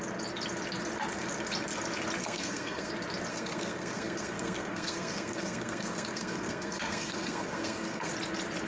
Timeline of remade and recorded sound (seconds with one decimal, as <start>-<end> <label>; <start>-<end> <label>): 0.0-2.2 recorded; 2.2-2.9 remade; 2.9-3.3 recorded; 3.3-8.1 remade; 8.1-8.7 recorded